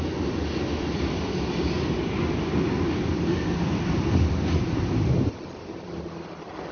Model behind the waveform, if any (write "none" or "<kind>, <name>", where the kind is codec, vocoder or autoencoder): vocoder, BigVGAN v2